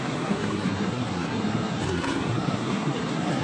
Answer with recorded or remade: remade